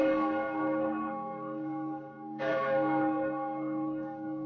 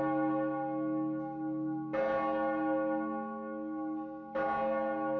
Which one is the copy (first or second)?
first